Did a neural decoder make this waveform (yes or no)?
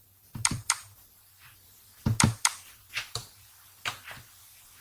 yes